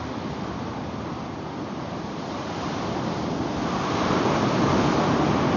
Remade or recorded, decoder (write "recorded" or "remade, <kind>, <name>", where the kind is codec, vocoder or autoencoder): recorded